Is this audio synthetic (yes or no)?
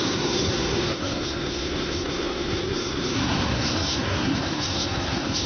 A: yes